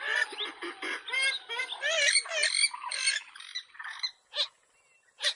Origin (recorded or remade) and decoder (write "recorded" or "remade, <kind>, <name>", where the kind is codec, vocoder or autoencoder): recorded